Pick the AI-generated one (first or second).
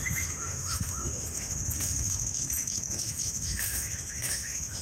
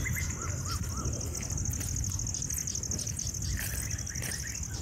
first